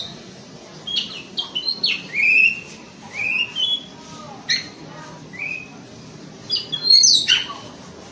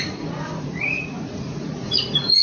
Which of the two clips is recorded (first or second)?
first